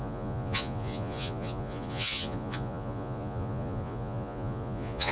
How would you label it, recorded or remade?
remade